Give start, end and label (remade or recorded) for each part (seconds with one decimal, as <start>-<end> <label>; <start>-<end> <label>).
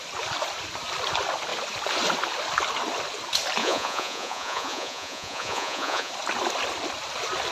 0.0-3.6 recorded; 3.6-6.1 remade; 6.1-7.5 recorded